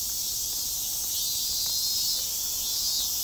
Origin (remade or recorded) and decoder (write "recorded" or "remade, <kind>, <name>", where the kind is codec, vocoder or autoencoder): recorded